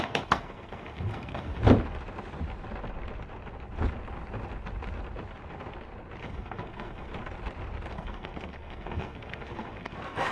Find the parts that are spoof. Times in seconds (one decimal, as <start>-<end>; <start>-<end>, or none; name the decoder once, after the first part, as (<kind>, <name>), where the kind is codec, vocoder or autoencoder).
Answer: 0.0-1.6 (codec, SNAC); 6.2-7.1; 7.9-10.3